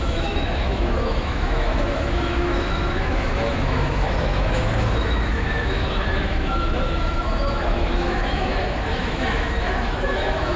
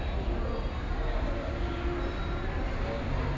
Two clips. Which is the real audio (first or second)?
second